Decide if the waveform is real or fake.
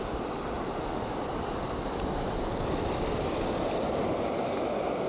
real